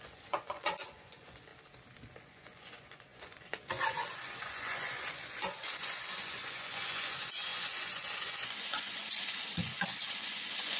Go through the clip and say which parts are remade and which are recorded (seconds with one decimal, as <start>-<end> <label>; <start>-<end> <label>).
0.0-1.5 remade; 1.5-2.2 recorded; 2.2-10.8 remade